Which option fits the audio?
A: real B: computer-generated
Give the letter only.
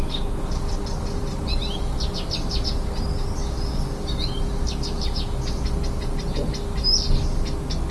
A